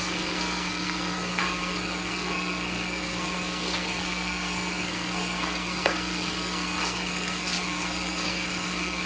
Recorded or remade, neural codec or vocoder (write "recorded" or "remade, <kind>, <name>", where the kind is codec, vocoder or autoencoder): remade, codec, SNAC